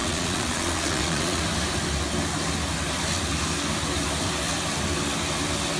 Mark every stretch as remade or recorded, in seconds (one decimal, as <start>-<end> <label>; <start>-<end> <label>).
0.0-1.4 remade; 1.4-5.8 recorded